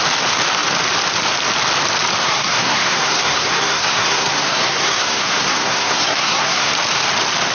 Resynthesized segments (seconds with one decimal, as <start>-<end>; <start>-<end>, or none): 2.2-6.7